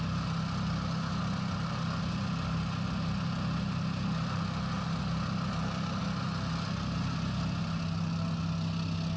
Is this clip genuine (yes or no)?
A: yes